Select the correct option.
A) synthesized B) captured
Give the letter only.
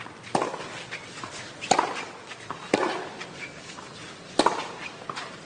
B